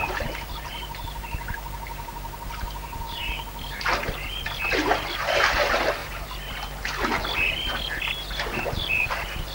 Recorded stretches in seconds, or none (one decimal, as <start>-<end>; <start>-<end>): 3.2-4.7; 6.0-8.6